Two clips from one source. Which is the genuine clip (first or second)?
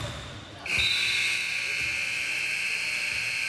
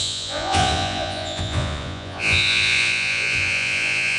first